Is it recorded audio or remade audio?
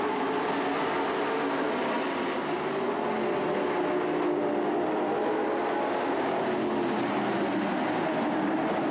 recorded